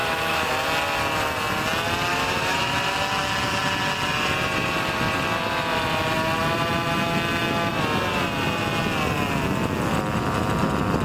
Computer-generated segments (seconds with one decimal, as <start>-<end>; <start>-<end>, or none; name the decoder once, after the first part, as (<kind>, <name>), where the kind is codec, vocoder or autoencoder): 0.0-0.5 (autoencoder, DAC-VAE); 2.1-2.7